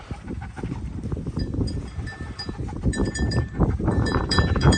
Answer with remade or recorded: remade